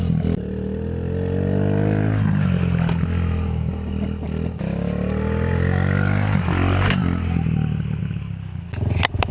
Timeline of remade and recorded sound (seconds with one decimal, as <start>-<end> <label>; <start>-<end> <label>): 0.0-9.3 recorded